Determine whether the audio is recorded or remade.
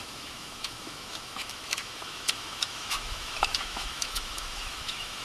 remade